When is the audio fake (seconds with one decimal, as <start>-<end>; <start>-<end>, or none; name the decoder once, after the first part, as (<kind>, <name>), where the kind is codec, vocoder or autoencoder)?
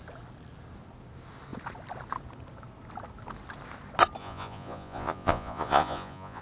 4.2-6.4 (vocoder, Vocos)